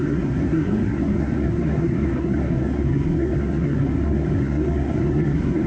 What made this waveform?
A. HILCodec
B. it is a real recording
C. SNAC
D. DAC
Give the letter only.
C